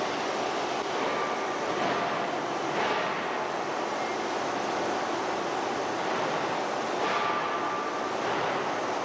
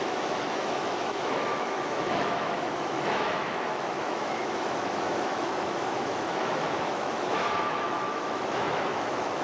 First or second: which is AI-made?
second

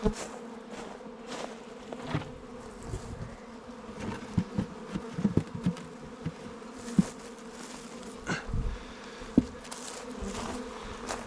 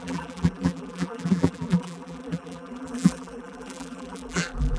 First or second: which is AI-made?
second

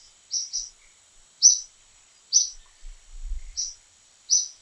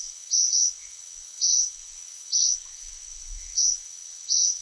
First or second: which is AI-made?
second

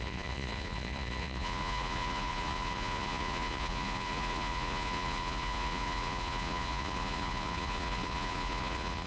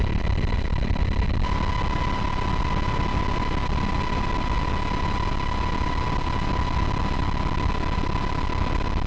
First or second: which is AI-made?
first